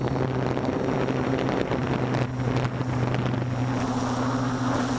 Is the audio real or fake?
real